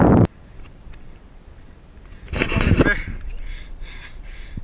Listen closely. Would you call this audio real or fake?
real